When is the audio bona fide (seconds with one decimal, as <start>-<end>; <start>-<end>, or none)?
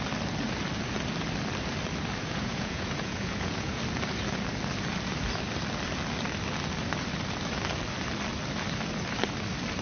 0.0-2.2; 3.8-9.8